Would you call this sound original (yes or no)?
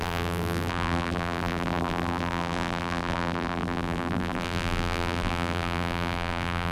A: no